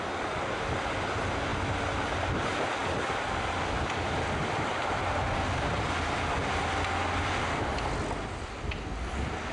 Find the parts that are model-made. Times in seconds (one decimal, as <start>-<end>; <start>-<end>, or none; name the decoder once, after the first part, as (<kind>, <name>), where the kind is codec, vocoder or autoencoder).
none